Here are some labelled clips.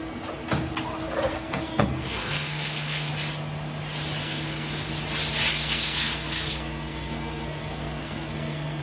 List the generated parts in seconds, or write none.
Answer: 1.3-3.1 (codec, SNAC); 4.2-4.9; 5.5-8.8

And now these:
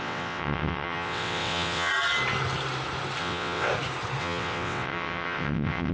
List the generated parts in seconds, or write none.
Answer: 0.0-1.9 (vocoder, WaveNeXt); 3.2-3.7; 4.2-5.9

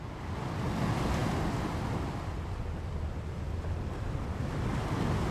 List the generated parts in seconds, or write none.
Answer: none

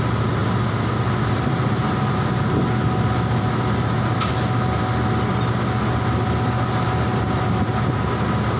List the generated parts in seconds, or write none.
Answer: none

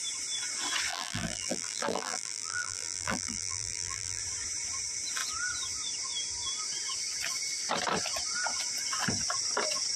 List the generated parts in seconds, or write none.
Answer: 0.9-4.2 (vocoder, BigVGAN v2)

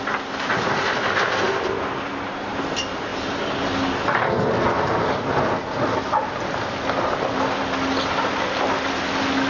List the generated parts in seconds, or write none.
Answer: none

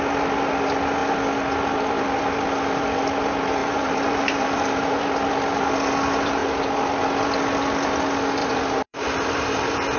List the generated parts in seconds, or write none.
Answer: 3.6-5.0 (vocoder, BigVGAN v2); 8.4-9.6

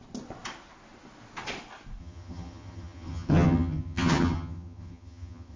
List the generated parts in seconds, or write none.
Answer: 2.0-5.6 (vocoder, HiFi-GAN)